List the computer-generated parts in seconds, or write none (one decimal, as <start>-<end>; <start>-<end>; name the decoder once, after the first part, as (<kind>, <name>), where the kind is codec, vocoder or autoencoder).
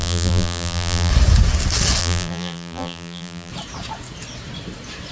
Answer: 0.0-1.1 (vocoder, BigVGAN v2); 2.0-3.5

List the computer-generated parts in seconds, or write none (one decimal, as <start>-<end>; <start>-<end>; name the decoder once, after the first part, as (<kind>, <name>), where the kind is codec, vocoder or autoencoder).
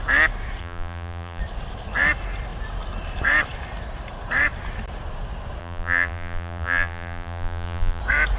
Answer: 0.6-1.4 (vocoder, BigVGAN v2); 5.6-8.0